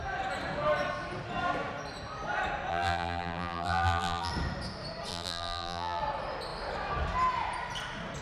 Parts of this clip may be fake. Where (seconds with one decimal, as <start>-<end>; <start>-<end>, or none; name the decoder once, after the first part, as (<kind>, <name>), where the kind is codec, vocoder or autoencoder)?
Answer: 2.7-4.3 (vocoder, BigVGAN v2); 5.1-6.0